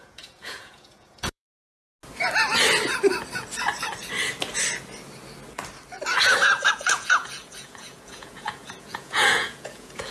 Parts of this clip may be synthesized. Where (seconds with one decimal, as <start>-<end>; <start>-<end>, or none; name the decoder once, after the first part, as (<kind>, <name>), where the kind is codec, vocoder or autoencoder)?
0.0-1.5 (vocoder, Vocos); 6.7-10.1